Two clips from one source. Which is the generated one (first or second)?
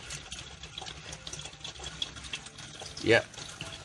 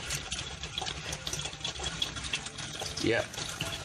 second